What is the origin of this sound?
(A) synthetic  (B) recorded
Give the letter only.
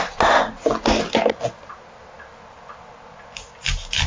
B